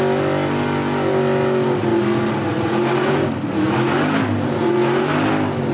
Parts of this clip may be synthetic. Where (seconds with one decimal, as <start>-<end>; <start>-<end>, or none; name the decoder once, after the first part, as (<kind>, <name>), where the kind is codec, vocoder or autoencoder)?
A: 1.9-5.3 (vocoder, BigVGAN v2)